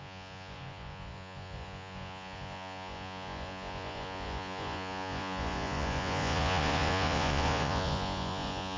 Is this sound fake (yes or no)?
yes